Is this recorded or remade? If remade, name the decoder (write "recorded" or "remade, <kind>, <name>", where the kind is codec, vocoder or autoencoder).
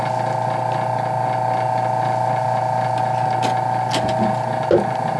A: recorded